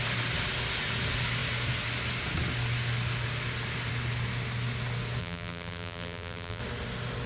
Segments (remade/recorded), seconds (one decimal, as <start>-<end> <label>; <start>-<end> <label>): 0.0-5.2 recorded; 5.2-6.6 remade; 6.6-7.3 recorded